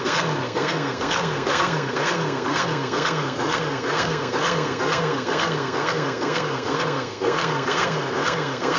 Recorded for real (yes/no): no